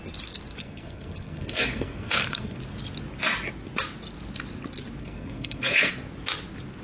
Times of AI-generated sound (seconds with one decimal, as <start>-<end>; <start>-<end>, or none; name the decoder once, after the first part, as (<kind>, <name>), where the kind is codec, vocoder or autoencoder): 0.6-2.6 (codec, SNAC); 5.0-5.9